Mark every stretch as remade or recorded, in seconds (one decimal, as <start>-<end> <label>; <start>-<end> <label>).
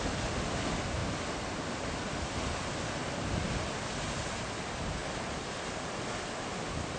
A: 0.0-5.0 recorded; 5.0-5.7 remade; 5.7-7.0 recorded